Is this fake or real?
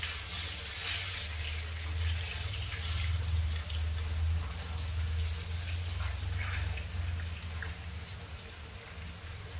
real